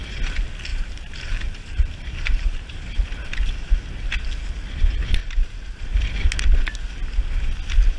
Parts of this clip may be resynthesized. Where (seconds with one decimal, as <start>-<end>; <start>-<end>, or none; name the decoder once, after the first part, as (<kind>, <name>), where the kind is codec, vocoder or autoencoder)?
0.7-2.8 (vocoder, BigVGAN v2); 5.2-5.8